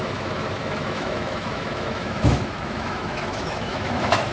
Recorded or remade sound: remade